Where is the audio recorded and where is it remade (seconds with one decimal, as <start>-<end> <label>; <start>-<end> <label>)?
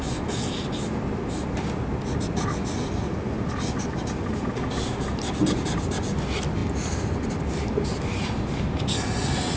0.0-9.6 recorded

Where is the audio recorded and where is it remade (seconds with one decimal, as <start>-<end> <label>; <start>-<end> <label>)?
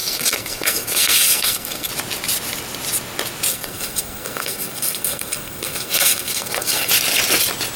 0.0-1.9 remade; 1.9-3.5 recorded; 3.5-6.9 remade; 6.9-7.8 recorded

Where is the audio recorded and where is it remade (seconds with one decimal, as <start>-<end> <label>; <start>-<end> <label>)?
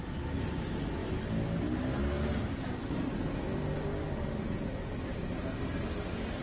0.0-6.4 recorded